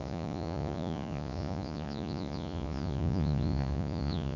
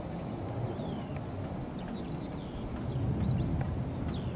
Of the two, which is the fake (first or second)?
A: first